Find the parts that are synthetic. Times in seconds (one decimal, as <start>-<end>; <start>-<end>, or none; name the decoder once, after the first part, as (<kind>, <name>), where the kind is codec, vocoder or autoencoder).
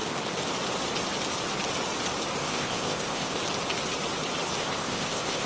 2.4-3.4 (codec, ZipCodec); 4.6-5.5